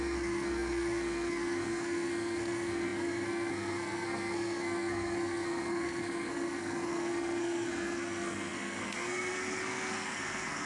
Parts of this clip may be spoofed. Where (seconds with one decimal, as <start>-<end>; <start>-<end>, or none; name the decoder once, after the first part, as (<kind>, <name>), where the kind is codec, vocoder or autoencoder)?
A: 0.0-10.7 (codec, SNAC)